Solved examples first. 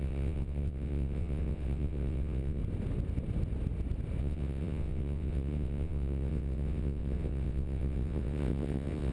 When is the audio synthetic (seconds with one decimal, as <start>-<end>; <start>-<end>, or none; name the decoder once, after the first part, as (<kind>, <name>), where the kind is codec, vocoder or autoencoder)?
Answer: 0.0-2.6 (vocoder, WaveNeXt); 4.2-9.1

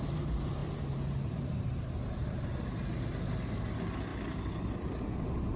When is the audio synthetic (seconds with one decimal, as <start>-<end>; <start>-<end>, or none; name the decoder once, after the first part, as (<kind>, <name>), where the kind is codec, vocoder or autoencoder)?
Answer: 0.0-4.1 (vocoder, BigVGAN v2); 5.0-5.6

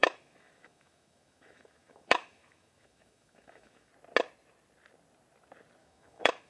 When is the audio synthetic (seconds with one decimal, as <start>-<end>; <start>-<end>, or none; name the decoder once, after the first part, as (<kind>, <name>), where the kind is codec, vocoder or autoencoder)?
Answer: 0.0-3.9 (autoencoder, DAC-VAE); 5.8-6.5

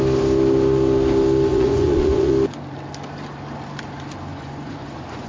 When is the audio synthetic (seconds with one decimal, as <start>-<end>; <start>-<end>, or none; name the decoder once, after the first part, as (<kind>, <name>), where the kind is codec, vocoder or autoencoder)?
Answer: 1.5-2.3 (vocoder, Vocos); 4.3-5.3